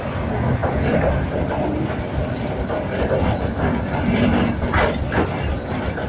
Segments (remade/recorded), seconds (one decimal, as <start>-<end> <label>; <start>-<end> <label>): 0.0-6.1 recorded